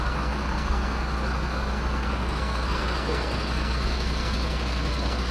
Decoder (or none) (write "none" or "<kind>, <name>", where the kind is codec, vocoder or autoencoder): codec, SNAC